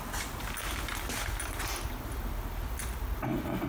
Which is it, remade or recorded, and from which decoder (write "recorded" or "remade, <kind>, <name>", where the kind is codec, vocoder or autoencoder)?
recorded